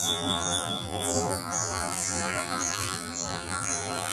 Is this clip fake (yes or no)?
yes